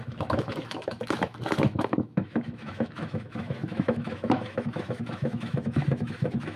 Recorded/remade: remade